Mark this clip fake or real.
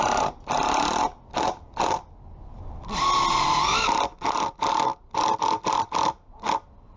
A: real